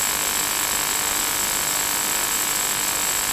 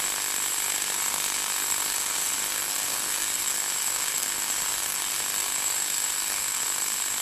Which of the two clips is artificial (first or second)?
second